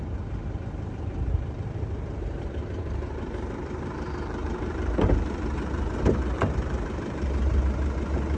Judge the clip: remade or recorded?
remade